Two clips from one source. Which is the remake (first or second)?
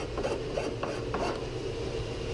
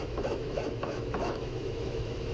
second